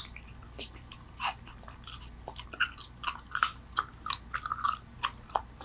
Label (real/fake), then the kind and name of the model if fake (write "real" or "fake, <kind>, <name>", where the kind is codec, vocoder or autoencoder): real